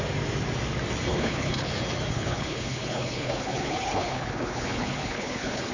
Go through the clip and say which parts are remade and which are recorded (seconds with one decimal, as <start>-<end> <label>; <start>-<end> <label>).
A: 0.0-1.1 recorded; 1.1-1.7 remade; 1.7-2.1 recorded; 2.1-5.7 remade